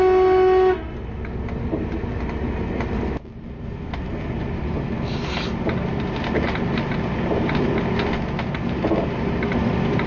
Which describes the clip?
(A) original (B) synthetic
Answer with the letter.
A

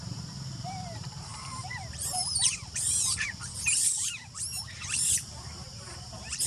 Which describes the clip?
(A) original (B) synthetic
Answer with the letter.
B